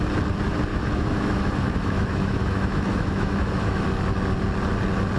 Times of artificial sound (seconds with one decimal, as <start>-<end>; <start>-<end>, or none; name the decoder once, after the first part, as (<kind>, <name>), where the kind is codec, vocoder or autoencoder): 0.7-3.8 (autoencoder, DAC-VAE)